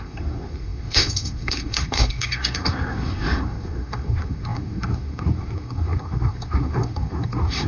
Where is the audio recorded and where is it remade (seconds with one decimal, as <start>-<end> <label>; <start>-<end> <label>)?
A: 0.0-7.7 remade